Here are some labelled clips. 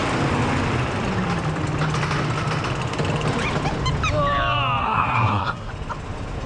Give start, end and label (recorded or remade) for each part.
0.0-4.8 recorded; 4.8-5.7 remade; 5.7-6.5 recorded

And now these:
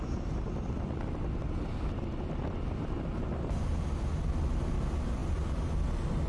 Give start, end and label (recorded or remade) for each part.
0.0-6.3 recorded

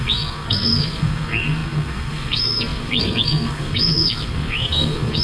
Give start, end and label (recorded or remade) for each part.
0.0-5.2 remade